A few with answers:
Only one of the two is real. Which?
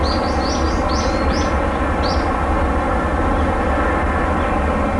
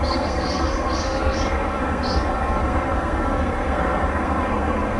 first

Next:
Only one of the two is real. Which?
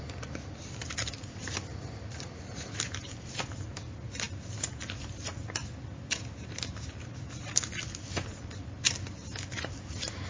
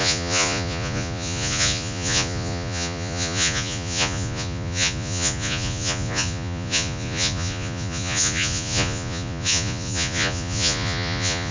first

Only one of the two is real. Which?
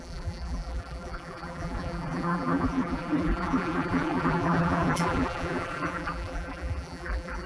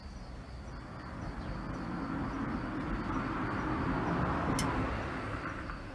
second